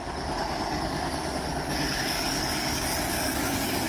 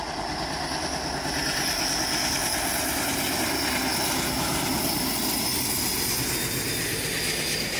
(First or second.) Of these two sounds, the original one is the second